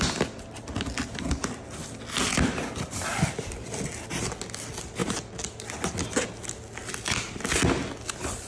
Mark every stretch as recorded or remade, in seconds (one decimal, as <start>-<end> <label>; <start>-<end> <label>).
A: 0.0-8.5 recorded